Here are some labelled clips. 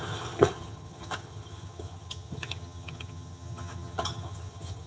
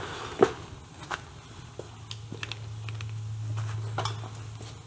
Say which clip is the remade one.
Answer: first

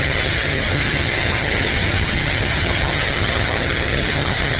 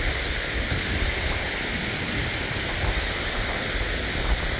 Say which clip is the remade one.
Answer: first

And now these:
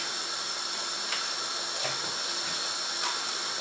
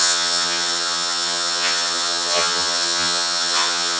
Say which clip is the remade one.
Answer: second